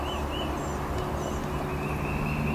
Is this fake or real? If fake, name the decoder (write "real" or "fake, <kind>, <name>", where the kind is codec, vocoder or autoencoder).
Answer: real